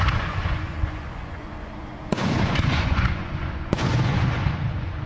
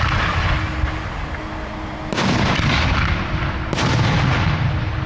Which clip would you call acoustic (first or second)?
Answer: second